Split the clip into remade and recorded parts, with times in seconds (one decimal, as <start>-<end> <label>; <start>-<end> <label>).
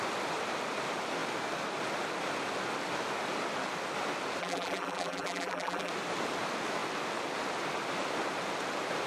0.0-4.4 recorded; 4.4-5.9 remade; 5.9-9.1 recorded